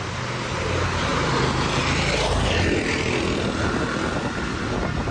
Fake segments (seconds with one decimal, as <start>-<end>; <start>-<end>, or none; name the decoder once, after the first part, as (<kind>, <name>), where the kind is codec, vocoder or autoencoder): none